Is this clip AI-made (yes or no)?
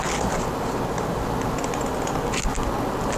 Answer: no